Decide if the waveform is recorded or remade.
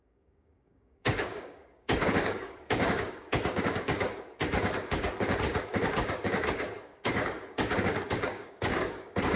remade